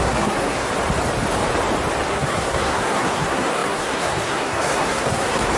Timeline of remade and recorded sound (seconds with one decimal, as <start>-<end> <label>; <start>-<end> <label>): 0.0-0.7 remade; 0.7-2.1 recorded; 2.1-5.6 remade

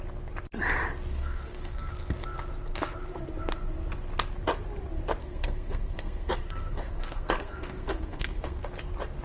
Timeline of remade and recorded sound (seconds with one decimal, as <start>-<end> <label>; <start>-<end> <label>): 0.0-1.1 recorded; 1.1-1.9 remade; 1.9-5.2 recorded; 5.2-8.6 remade; 8.6-9.2 recorded

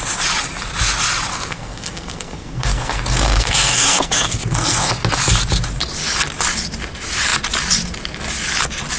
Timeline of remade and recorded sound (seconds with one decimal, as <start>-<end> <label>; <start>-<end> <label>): 0.0-1.3 recorded; 1.3-4.9 remade; 4.9-9.0 recorded

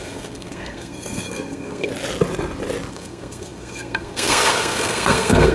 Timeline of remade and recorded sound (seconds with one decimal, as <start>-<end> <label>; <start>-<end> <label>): 0.0-1.9 remade; 1.9-2.9 recorded; 2.9-5.5 remade

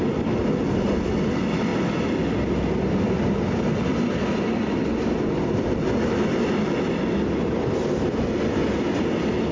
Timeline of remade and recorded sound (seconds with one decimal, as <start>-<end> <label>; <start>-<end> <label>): 0.0-9.5 recorded